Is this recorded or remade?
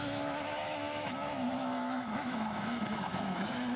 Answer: remade